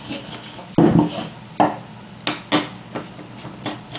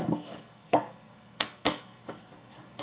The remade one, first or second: second